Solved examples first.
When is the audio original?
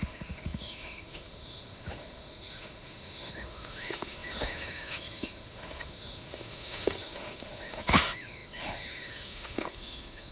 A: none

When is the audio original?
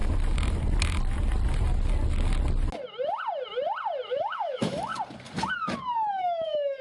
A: 0.0-4.1; 4.9-6.1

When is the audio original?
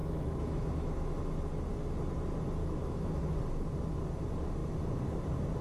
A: 1.1-2.6; 3.3-5.6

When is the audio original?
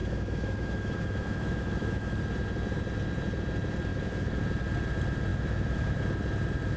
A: 2.2-3.9; 4.4-5.3; 6.0-6.8